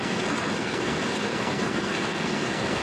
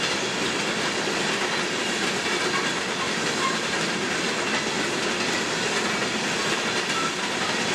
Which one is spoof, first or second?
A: first